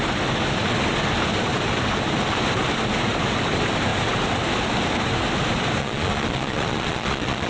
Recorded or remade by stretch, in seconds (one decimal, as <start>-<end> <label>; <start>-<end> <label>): 0.0-5.8 recorded; 5.8-7.5 remade